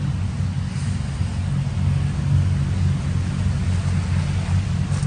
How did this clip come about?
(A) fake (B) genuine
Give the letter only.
B